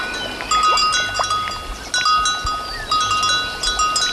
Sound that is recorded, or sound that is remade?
recorded